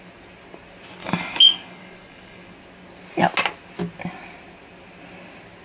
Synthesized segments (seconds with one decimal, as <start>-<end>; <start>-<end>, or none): 1.0-2.5